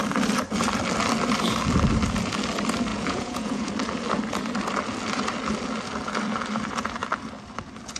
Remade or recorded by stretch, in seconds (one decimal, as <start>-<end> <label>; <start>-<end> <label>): 0.0-2.9 recorded; 2.9-3.7 remade; 3.7-8.0 recorded